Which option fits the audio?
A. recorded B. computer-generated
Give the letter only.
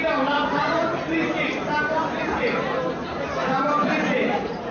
A